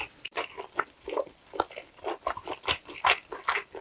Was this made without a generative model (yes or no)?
yes